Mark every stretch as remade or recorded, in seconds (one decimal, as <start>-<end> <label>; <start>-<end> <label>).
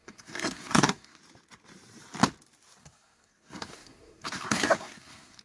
0.0-1.2 remade; 1.2-2.8 recorded; 2.8-5.4 remade